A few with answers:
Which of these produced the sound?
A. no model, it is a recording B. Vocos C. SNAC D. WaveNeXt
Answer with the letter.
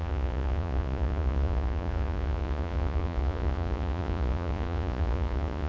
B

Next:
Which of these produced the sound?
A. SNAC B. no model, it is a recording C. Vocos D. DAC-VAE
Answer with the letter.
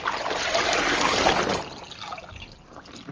B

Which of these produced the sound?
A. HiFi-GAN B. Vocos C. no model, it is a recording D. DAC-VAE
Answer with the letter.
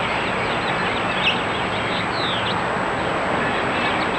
C